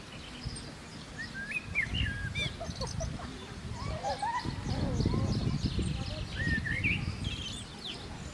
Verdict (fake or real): real